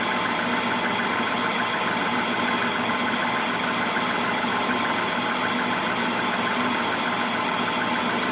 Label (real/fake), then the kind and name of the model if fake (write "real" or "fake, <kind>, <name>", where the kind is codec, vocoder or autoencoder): real